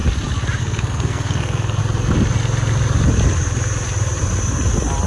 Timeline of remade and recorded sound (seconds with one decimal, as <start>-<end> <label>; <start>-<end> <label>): 0.0-0.6 recorded; 0.6-1.8 remade; 1.8-5.1 recorded